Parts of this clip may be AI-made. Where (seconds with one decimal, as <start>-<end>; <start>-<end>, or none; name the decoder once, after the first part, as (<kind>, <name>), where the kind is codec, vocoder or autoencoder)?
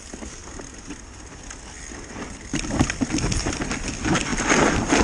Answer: none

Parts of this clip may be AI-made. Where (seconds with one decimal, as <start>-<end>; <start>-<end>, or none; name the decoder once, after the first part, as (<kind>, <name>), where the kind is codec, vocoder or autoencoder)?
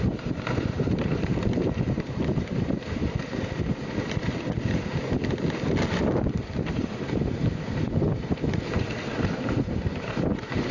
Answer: 0.0-3.0 (vocoder, BigVGAN v2); 6.7-10.7